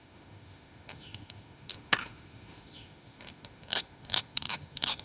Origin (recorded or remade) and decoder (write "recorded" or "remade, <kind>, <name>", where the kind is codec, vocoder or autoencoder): remade, autoencoder, DAC-VAE